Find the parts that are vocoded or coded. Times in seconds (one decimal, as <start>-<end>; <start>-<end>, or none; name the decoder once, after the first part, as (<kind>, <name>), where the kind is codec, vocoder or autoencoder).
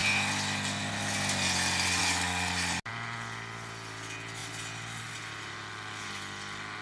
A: none